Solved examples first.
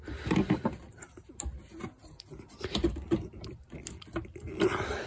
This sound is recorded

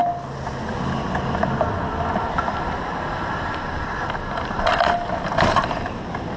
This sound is recorded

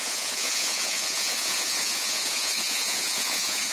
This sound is remade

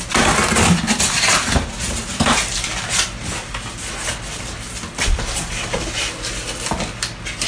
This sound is recorded